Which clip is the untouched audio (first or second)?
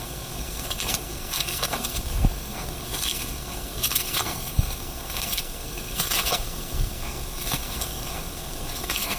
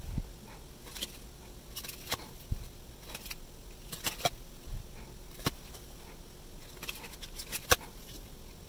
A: second